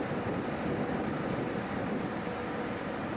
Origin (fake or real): real